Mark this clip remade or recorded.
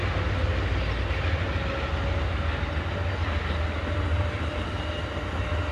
recorded